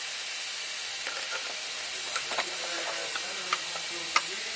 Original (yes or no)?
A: yes